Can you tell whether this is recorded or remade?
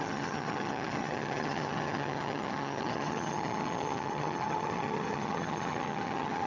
remade